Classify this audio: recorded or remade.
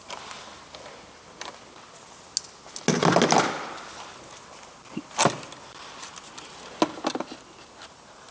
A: recorded